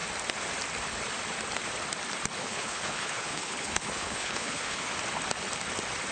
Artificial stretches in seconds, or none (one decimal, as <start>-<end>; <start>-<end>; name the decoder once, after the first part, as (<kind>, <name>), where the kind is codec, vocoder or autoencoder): 2.4-4.9 (codec, HILCodec)